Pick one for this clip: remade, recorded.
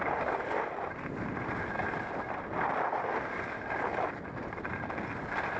recorded